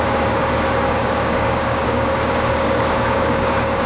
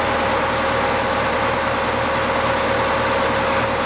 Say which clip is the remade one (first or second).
first